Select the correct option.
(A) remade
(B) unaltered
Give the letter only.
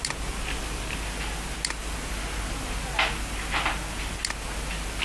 B